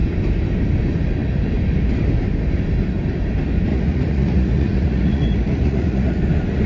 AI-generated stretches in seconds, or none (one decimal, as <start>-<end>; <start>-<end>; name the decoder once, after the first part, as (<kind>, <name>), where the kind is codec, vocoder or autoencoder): 3.7-6.2 (vocoder, Vocos)